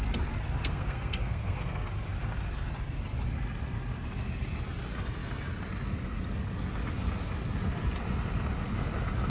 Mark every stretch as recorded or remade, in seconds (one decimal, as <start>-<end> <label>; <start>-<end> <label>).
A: 0.0-0.6 recorded; 0.6-1.9 remade; 1.9-9.3 recorded